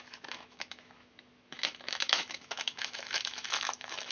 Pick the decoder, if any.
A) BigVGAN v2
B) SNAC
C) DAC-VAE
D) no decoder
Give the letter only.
C